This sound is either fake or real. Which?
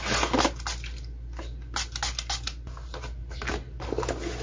real